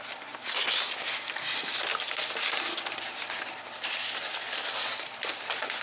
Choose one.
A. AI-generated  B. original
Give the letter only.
A